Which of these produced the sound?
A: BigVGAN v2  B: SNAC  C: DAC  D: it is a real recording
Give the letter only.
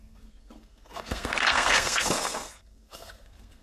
B